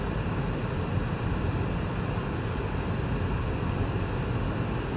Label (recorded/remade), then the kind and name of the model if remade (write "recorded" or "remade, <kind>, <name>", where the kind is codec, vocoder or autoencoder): recorded